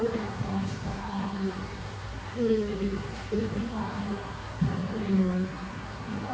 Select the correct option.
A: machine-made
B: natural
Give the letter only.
A